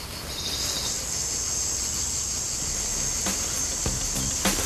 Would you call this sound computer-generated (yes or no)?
no